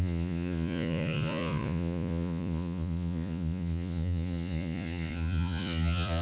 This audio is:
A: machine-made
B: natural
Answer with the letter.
A